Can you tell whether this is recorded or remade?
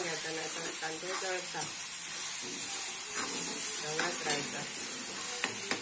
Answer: recorded